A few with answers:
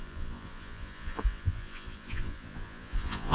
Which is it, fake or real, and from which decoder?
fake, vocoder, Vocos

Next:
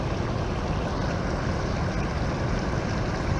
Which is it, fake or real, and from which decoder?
real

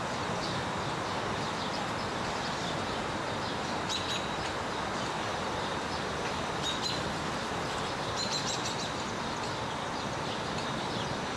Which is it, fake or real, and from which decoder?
fake, vocoder, BigVGAN v2